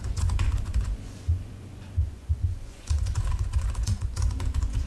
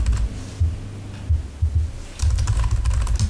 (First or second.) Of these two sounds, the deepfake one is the first